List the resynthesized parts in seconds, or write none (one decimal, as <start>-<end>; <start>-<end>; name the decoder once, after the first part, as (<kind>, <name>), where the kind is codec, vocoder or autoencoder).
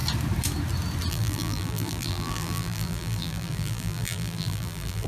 1.1-5.1 (vocoder, BigVGAN v2)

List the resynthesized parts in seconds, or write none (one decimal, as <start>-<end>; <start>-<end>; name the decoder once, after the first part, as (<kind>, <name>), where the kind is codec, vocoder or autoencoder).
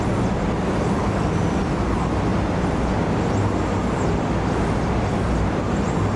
none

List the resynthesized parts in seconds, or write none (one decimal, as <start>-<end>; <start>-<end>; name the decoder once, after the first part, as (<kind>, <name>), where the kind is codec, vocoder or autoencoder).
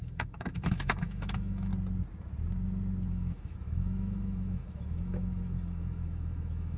0.0-1.7 (autoencoder, DAC-VAE); 3.1-6.8